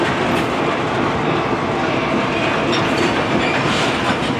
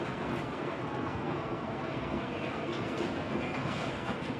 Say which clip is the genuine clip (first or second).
first